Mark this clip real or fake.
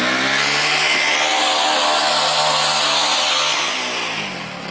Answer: real